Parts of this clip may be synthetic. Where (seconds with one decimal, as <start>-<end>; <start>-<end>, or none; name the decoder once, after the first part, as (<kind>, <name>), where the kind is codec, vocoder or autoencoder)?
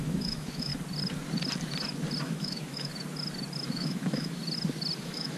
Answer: 0.0-0.7 (autoencoder, DAC-VAE); 2.2-2.9; 3.7-4.4; 5.0-5.4